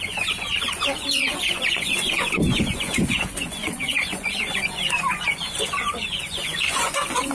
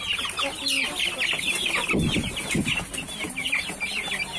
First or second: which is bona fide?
second